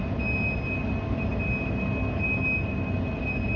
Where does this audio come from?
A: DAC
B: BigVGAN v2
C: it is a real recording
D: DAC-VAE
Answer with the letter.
C